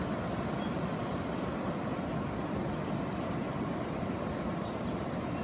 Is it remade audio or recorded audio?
recorded